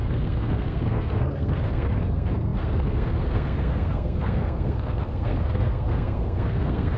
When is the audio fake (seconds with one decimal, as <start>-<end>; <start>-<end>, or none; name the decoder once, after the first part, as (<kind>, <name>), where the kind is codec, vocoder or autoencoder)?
0.0-7.0 (codec, SNAC)